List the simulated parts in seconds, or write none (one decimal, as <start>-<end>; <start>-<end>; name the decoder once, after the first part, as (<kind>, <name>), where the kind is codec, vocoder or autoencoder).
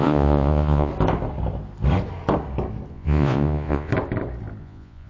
0.0-0.9 (vocoder, Vocos); 2.9-3.9; 4.6-5.1